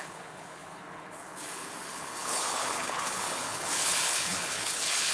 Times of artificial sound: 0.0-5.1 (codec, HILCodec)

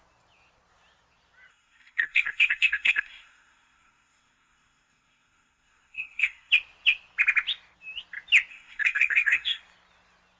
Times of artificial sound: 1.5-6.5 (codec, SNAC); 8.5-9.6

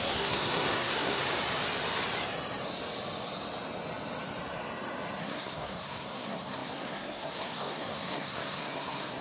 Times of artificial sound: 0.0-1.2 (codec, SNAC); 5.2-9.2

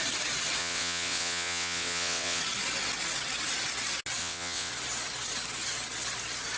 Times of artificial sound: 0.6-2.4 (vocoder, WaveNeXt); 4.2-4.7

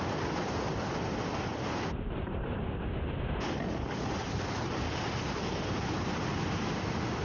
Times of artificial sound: none